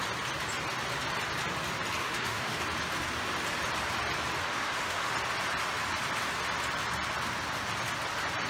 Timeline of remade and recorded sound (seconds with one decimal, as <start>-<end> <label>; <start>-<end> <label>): 0.0-2.0 recorded; 2.0-2.6 remade; 2.6-4.4 recorded; 4.4-5.1 remade; 5.1-8.5 recorded